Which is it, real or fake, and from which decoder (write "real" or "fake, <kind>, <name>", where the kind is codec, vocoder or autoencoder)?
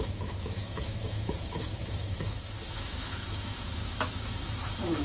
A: fake, autoencoder, DAC-VAE